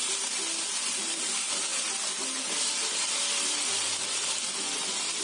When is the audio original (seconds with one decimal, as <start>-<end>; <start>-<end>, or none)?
0.0-5.2

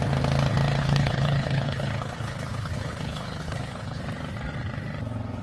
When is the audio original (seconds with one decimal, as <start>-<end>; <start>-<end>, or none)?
0.0-0.8; 4.0-5.4

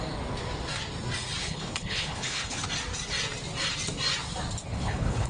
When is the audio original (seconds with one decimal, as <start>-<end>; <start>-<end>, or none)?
0.0-1.4; 2.6-4.7